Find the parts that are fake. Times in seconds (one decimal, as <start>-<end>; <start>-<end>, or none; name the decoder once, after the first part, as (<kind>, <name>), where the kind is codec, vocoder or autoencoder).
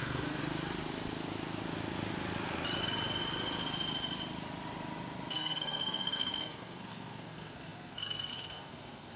0.0-0.4 (codec, SNAC); 5.3-9.2